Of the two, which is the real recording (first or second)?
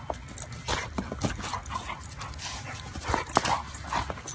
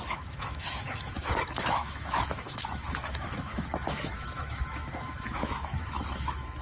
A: first